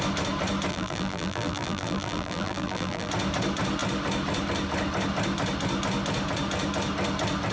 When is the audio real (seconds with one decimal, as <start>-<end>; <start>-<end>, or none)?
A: 0.0-0.7; 3.1-7.5